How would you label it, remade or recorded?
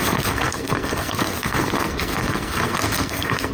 remade